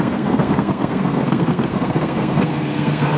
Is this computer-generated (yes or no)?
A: yes